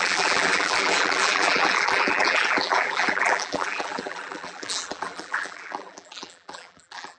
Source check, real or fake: fake